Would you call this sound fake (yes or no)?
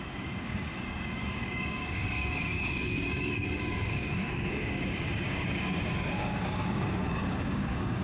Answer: yes